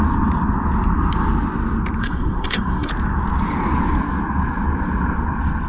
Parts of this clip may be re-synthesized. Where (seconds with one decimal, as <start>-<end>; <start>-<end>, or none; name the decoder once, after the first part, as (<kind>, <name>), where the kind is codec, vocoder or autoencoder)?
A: 2.0-2.9 (codec, SNAC)